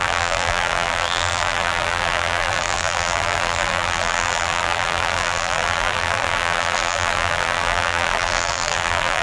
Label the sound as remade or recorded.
remade